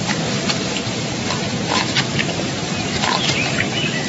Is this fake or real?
fake